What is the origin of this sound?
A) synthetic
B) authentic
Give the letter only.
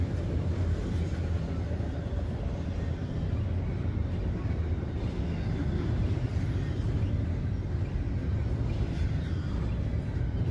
B